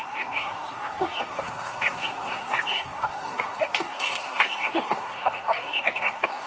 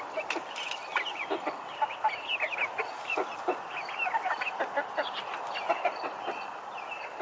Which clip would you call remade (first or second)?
first